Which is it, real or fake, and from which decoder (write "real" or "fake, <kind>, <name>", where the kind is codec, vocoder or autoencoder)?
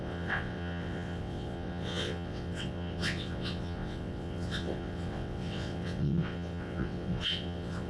fake, vocoder, WaveNeXt